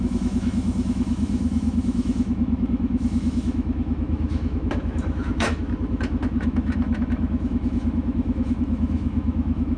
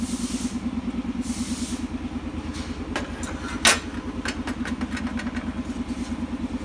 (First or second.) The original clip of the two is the second